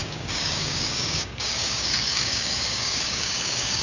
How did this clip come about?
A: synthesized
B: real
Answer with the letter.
A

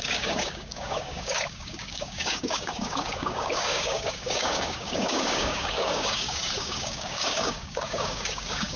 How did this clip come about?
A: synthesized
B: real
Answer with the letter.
A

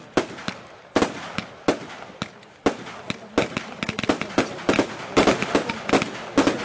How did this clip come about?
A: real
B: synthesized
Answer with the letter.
A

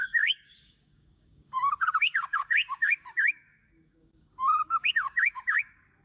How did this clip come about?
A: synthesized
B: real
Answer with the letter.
A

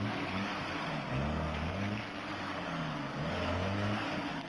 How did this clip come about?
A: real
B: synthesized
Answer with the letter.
B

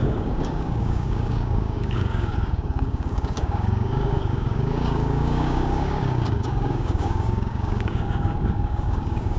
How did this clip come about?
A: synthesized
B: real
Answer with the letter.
A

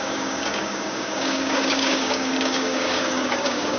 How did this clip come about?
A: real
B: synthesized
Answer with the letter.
B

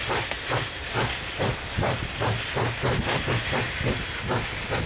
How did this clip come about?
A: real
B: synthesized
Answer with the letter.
A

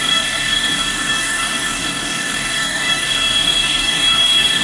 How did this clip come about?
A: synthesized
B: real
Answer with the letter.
A